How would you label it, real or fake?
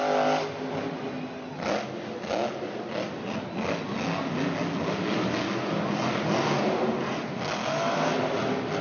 real